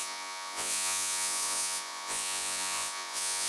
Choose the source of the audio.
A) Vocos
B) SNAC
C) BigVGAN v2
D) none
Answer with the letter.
A